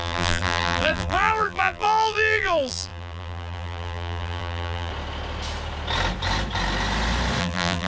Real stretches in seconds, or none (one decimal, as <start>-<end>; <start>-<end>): 4.9-7.4

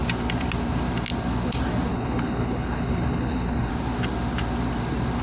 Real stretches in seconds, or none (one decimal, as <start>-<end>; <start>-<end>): 0.0-1.9; 3.7-5.2

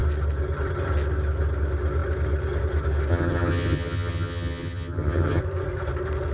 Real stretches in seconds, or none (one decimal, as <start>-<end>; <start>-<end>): 0.0-3.1; 5.4-6.3

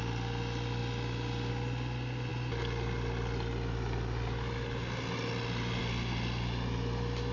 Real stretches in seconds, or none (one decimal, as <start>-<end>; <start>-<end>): 0.0-7.3

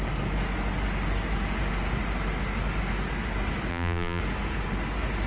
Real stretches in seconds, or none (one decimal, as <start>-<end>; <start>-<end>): 0.0-3.7; 4.2-5.3